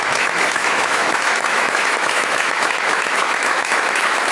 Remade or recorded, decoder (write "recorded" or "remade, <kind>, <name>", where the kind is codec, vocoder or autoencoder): remade, autoencoder, DAC-VAE